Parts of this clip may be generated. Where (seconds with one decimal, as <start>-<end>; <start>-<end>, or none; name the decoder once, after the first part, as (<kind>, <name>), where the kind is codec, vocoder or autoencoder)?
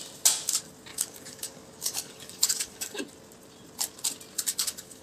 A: 0.9-3.0 (codec, DAC); 4.5-5.0